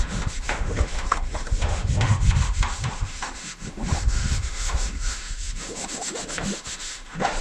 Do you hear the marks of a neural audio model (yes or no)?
yes